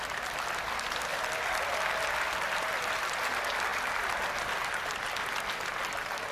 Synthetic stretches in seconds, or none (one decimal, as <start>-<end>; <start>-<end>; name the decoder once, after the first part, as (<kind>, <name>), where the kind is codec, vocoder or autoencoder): 1.1-1.7 (vocoder, BigVGAN v2); 3.7-5.3